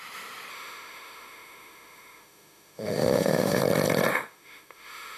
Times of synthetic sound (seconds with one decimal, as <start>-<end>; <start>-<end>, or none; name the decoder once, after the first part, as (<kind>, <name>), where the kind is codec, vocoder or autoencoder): 0.5-3.6 (autoencoder, DAC-VAE); 4.1-5.2